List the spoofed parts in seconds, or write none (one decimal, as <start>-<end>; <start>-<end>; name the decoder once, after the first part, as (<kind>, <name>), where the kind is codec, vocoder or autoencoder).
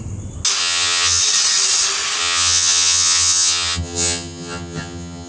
0.6-1.2 (vocoder, HiFi-GAN); 2.2-5.3